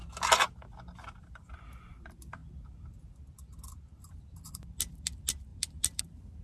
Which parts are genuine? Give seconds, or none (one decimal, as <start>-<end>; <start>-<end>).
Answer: 0.0-1.2; 2.4-4.5